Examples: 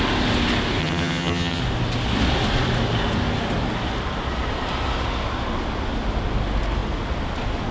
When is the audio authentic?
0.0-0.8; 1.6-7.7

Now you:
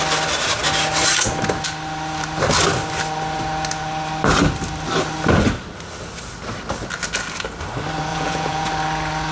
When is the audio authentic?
0.0-8.1; 8.7-9.3

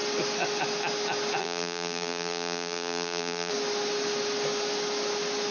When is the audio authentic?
0.0-1.4; 3.5-5.5

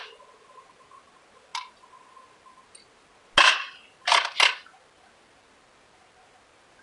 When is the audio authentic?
0.0-6.8

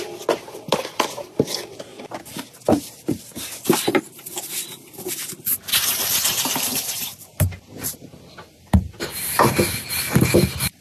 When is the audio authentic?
1.9-3.0

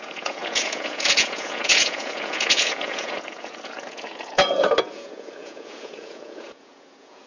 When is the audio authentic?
none

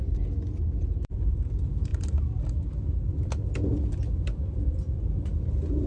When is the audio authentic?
1.9-3.1

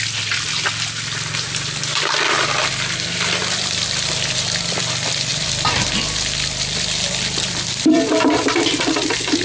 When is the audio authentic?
2.7-3.4